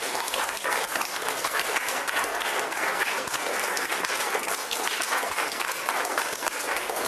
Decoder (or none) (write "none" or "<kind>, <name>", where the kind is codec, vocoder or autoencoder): codec, SNAC